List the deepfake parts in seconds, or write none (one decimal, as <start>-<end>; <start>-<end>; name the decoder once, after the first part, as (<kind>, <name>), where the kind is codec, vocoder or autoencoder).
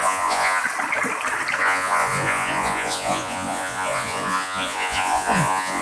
0.0-0.6 (vocoder, Vocos); 1.6-5.8